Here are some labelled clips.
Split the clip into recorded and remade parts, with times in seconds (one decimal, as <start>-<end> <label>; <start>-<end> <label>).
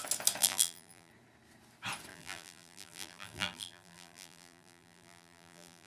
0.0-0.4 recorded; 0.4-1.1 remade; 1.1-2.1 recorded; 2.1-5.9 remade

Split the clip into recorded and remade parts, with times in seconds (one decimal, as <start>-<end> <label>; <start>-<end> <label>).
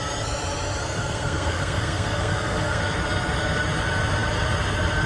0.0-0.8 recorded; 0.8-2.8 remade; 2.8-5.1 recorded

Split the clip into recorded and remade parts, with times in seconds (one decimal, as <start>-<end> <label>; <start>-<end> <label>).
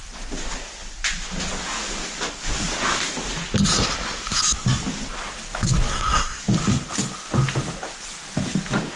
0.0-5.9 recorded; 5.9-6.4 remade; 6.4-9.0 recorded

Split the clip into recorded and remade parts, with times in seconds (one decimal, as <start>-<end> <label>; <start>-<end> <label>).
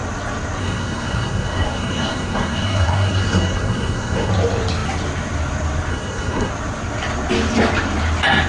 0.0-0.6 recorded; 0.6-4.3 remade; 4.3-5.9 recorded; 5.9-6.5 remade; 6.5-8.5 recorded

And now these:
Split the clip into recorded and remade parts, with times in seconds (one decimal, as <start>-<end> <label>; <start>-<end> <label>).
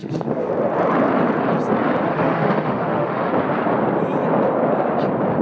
0.0-0.5 remade; 0.5-2.1 recorded; 2.1-3.3 remade; 3.3-5.4 recorded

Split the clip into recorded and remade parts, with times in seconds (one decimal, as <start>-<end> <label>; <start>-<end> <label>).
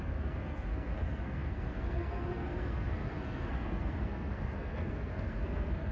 0.0-5.9 remade